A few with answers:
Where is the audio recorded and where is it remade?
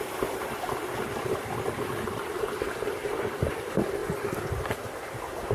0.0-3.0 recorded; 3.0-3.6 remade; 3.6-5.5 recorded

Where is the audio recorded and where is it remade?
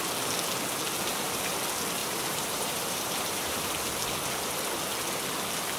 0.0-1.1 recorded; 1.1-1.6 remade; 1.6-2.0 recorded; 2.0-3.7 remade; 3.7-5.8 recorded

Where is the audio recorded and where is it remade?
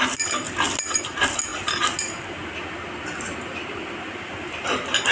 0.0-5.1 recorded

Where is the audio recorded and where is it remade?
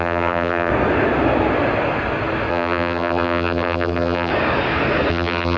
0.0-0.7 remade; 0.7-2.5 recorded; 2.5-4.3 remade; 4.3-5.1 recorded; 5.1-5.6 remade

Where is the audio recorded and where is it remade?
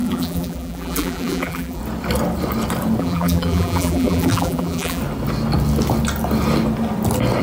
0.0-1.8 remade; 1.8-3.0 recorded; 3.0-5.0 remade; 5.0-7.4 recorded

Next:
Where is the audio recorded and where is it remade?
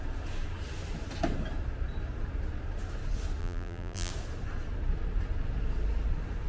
0.0-3.4 recorded; 3.4-4.1 remade; 4.1-6.5 recorded